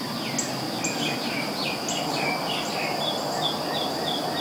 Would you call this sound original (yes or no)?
yes